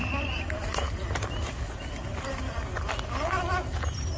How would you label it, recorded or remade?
recorded